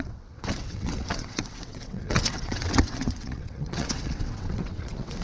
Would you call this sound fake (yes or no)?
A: yes